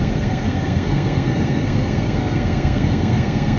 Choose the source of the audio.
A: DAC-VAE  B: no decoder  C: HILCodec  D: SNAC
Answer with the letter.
D